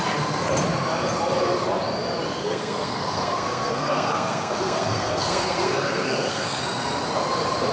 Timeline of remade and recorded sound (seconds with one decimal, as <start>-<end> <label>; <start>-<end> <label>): 0.0-2.4 recorded; 2.4-6.6 remade; 6.6-7.7 recorded